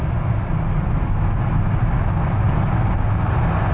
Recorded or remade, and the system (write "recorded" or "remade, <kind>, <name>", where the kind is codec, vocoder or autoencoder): recorded